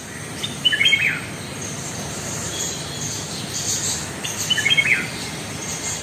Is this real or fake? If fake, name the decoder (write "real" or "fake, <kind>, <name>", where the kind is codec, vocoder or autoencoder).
real